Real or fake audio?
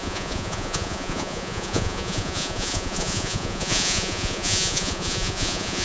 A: fake